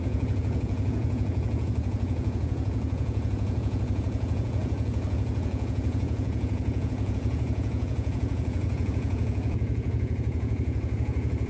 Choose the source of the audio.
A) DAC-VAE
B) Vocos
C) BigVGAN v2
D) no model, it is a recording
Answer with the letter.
B